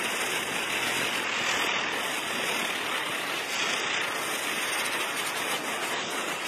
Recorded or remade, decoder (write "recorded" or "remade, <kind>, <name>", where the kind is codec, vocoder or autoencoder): recorded